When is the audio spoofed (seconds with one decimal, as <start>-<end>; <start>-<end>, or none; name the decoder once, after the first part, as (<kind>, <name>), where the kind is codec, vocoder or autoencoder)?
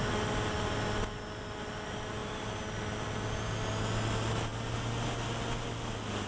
none